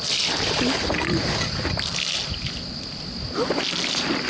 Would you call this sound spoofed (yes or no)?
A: no